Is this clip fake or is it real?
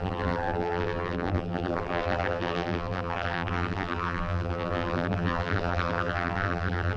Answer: fake